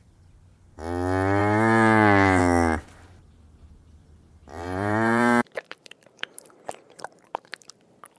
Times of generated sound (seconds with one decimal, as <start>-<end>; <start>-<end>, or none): 1.4-2.4; 4.4-7.7